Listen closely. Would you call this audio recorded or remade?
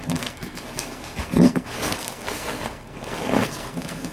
remade